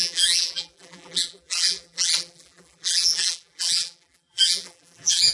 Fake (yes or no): yes